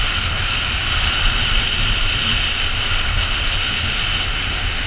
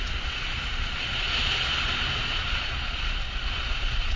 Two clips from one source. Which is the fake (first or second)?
second